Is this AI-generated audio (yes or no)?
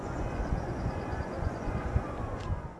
yes